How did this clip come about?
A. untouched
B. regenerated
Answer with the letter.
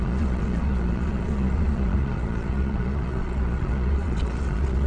B